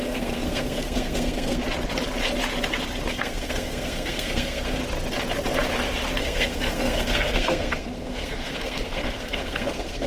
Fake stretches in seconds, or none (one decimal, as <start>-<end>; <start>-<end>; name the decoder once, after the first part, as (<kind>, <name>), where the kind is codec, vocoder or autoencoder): 0.0-1.6 (codec, SNAC); 3.1-4.8; 6.2-10.1